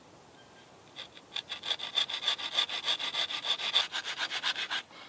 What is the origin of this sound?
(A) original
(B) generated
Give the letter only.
A